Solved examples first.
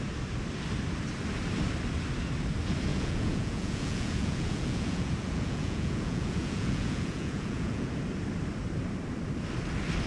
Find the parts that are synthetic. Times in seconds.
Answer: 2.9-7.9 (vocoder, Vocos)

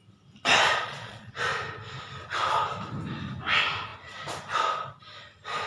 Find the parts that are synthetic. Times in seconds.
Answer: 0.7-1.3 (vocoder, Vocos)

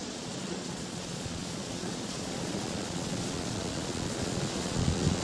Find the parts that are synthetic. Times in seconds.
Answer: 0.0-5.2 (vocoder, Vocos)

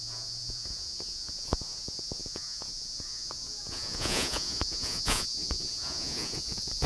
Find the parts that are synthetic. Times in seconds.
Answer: 0.0-6.9 (vocoder, Vocos)